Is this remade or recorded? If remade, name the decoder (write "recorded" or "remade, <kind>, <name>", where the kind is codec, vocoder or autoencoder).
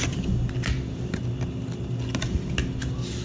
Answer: recorded